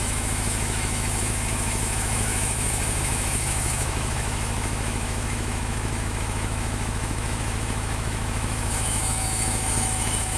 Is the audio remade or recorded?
remade